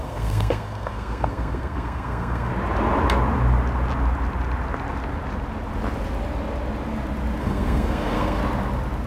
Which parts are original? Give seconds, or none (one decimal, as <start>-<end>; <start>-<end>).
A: 2.5-7.4; 8.4-9.1